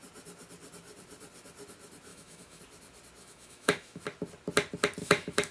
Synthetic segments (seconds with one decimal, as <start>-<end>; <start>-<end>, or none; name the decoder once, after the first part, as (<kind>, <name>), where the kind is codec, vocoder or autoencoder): 2.1-2.6 (autoencoder, DAC-VAE); 3.2-4.0; 5.0-5.5